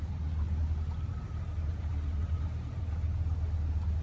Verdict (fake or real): real